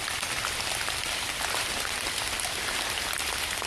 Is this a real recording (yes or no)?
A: no